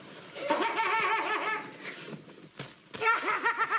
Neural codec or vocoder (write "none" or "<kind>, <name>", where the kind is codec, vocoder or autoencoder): none